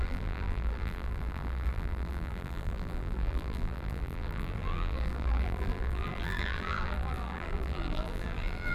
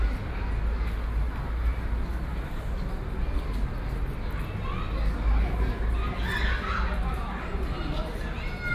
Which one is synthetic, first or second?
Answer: first